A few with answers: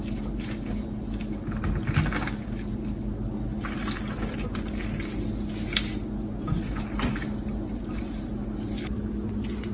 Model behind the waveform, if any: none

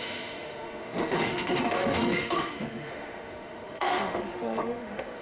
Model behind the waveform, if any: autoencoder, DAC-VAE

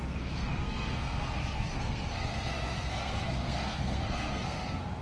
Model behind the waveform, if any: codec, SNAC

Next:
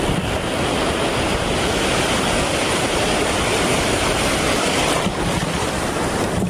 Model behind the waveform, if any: none